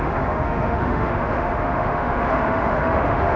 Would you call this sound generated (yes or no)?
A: yes